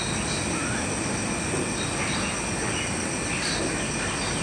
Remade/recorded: recorded